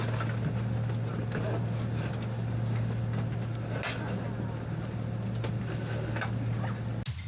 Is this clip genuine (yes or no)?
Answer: yes